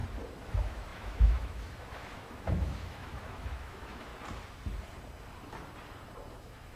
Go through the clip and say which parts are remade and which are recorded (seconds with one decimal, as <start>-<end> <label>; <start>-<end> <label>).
0.0-0.5 recorded; 0.5-4.1 remade; 4.1-6.3 recorded; 6.3-6.8 remade